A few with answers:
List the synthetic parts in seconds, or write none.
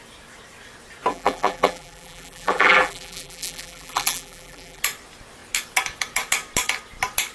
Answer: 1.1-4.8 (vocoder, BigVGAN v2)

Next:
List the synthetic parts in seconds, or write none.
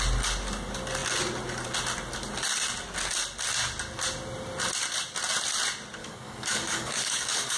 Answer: 6.0-7.6 (codec, DAC)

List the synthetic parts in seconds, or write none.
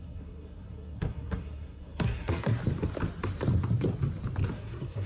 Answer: 0.0-2.6 (codec, SNAC); 4.5-5.1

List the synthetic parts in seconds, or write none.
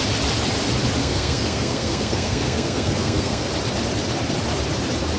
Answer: 1.0-3.5 (codec, SNAC)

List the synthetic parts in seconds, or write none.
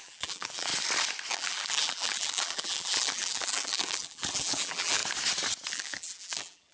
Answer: 0.0-0.7 (vocoder, BigVGAN v2); 1.3-5.0; 5.7-6.7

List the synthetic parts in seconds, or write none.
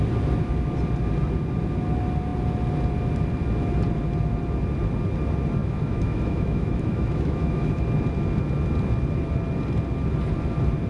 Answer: 5.6-7.8 (autoencoder, DAC-VAE)